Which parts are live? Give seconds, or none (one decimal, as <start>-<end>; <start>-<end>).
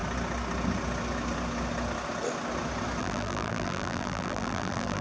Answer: 0.0-3.0